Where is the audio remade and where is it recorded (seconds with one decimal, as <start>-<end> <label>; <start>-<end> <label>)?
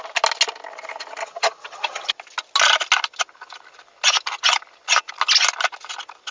0.0-1.2 recorded; 1.2-2.1 remade; 2.1-6.3 recorded